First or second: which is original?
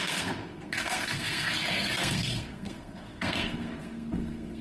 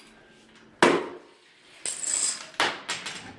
second